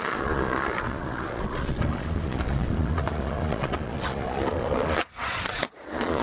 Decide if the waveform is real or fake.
fake